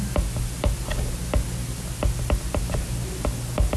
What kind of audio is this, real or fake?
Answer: real